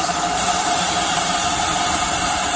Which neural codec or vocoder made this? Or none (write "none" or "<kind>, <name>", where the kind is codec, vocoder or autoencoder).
none